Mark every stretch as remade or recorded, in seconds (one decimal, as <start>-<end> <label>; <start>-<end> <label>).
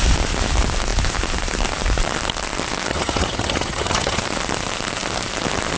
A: 0.0-2.9 recorded; 2.9-4.2 remade; 4.2-5.8 recorded